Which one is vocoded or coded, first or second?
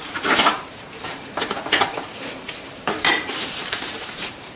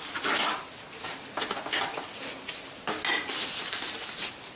first